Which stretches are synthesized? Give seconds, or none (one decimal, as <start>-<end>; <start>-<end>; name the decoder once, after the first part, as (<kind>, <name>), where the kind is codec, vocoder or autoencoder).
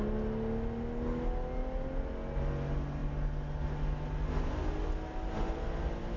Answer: none